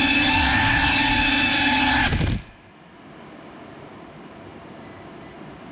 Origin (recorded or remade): recorded